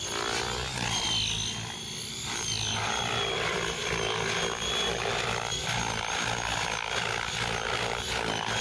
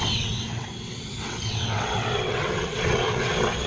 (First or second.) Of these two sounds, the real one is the first